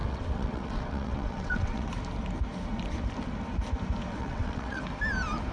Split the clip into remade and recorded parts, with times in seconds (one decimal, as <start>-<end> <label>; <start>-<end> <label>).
0.0-1.9 remade; 1.9-4.1 recorded; 4.1-4.8 remade; 4.8-5.5 recorded